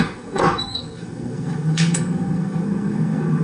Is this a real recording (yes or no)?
no